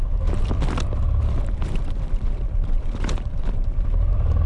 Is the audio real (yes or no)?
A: yes